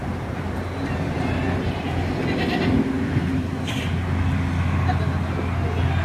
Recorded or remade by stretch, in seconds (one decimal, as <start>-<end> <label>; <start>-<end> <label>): 0.0-2.2 remade; 2.2-6.0 recorded